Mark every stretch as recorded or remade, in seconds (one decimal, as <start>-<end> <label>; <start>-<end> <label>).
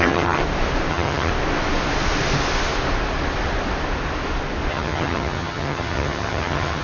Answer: 0.0-0.4 remade; 0.4-0.9 recorded; 0.9-1.3 remade; 1.3-4.7 recorded; 4.7-6.8 remade